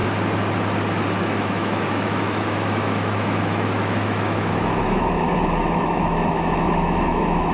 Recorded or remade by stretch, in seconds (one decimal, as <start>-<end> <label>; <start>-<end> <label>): 0.0-1.2 recorded; 1.2-7.5 remade